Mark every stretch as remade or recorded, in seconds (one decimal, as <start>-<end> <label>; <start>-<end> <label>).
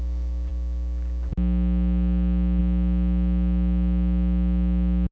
0.0-5.1 recorded